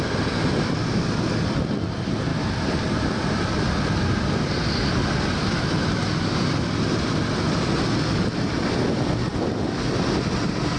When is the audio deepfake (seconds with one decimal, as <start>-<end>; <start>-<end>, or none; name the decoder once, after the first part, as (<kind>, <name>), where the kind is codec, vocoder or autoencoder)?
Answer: none